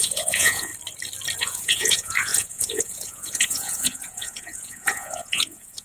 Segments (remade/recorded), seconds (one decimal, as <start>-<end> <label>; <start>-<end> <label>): 0.0-0.7 remade; 0.7-1.4 recorded; 1.4-5.8 remade